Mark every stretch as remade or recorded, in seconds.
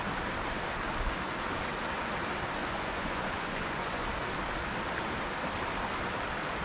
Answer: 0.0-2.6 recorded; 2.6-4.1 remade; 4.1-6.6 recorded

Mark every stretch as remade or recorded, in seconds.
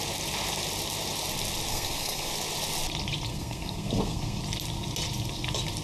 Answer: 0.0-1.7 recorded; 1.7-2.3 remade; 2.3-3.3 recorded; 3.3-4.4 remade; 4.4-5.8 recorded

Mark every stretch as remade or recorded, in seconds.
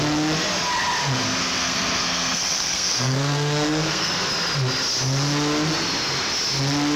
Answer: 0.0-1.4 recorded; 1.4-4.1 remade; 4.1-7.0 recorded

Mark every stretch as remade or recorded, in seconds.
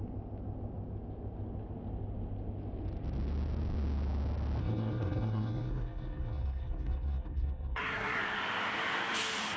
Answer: 0.0-4.6 recorded; 4.6-8.2 remade; 8.2-9.6 recorded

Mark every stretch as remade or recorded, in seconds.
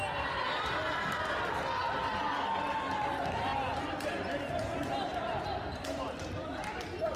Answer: 0.0-7.2 recorded